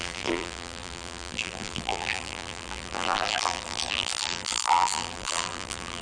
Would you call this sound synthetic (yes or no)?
yes